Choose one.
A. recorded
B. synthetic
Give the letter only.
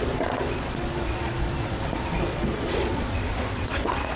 B